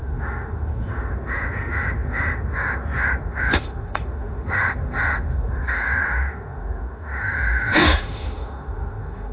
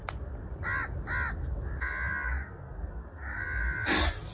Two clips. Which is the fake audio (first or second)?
first